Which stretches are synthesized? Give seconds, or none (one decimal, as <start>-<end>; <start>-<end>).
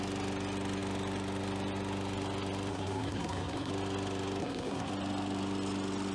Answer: 2.7-3.7; 4.4-4.9